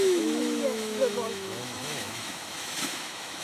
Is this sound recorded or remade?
remade